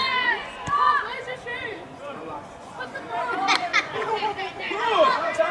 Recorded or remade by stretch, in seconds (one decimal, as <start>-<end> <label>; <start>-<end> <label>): 0.0-5.5 remade